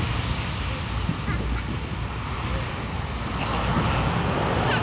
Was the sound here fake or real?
real